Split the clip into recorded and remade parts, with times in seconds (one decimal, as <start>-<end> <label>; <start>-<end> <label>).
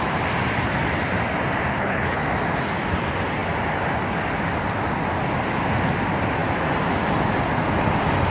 0.0-1.7 recorded; 1.7-2.2 remade; 2.2-8.3 recorded